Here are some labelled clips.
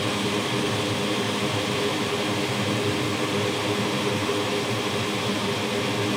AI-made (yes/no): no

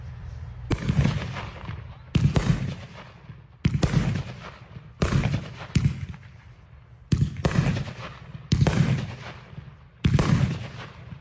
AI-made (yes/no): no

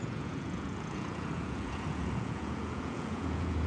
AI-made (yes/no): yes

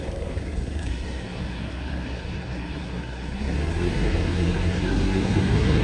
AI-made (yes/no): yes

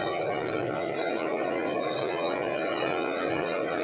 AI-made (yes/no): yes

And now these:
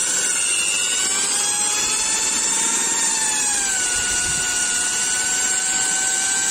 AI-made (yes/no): no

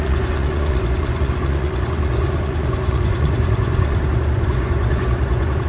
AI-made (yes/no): yes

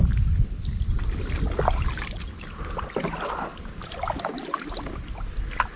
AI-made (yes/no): no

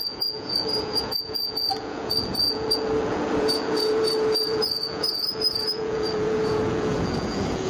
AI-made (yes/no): yes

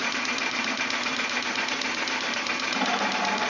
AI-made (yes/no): yes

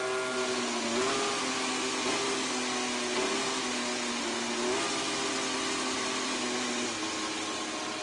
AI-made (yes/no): no